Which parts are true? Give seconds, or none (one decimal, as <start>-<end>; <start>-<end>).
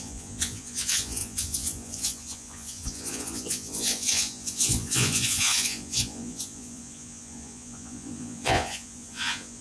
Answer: none